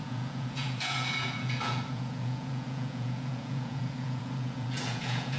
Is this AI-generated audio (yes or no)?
yes